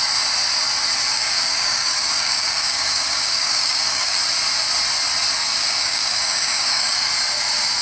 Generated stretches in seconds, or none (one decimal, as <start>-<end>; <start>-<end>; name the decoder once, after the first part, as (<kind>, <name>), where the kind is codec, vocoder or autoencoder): 1.1-4.2 (codec, DAC); 5.5-7.1